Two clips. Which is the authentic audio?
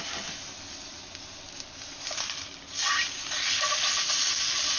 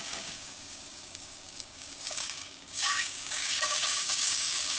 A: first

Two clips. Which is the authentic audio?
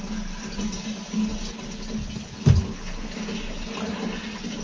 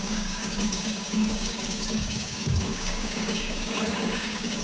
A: first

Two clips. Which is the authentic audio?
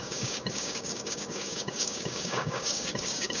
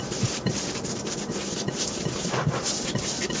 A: second